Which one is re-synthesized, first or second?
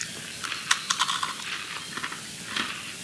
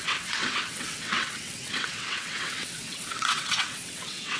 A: second